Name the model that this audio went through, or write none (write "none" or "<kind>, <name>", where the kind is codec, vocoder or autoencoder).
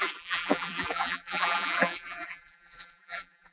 vocoder, BigVGAN v2